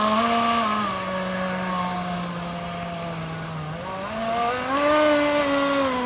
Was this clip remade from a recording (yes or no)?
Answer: no